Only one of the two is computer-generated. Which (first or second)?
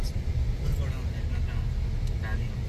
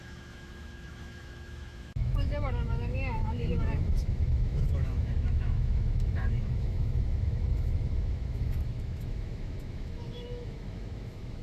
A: second